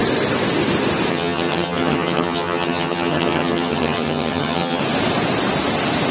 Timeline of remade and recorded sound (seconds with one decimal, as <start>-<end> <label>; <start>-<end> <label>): 0.0-1.1 recorded; 1.1-4.8 remade; 4.8-6.1 recorded